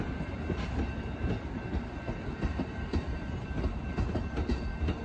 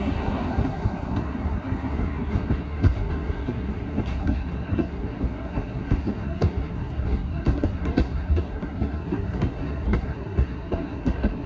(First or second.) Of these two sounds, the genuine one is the first